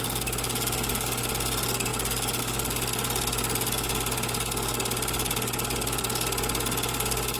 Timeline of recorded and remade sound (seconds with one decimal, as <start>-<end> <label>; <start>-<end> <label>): 0.0-7.4 recorded